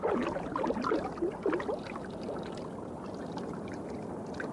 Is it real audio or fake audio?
real